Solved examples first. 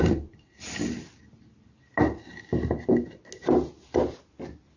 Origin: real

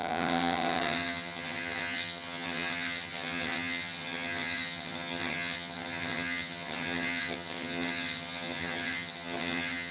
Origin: fake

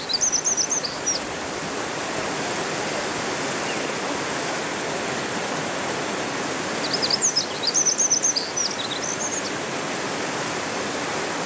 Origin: real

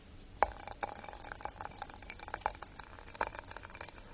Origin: real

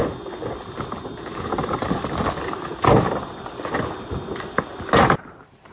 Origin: real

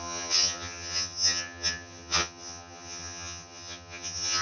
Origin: fake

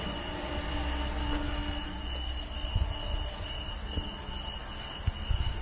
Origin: real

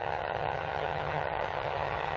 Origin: fake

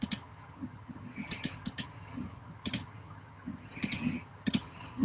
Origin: fake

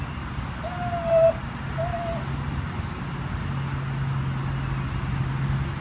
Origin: real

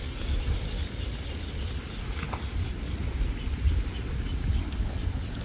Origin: real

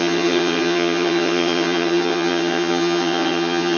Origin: fake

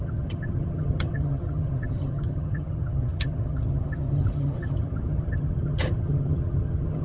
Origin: fake